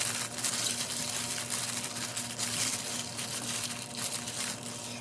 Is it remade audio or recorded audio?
recorded